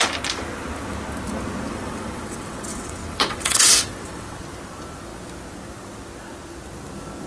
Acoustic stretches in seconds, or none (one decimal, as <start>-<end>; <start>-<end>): 0.0-1.7; 4.4-7.3